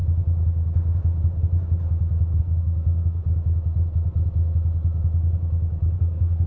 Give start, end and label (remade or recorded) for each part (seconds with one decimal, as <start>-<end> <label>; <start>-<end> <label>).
0.0-2.4 recorded; 2.4-3.2 remade; 3.2-6.0 recorded; 6.0-6.5 remade